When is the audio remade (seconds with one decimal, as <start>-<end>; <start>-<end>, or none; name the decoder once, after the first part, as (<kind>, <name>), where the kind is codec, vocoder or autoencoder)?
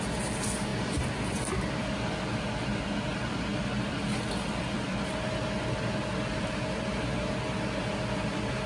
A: none